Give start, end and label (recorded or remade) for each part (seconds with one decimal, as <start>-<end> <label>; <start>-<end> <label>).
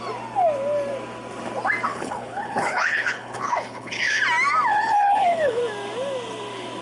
0.0-1.9 recorded; 1.9-4.2 remade; 4.2-4.7 recorded; 4.7-5.6 remade; 5.6-6.8 recorded